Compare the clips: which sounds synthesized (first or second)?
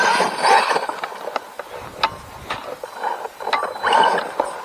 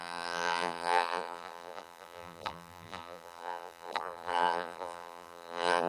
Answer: second